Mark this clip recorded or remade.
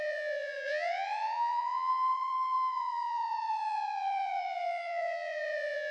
remade